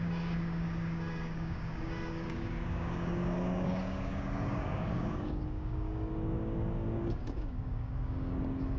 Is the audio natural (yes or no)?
no